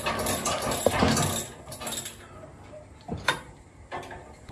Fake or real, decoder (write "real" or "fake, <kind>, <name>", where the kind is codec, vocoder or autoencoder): real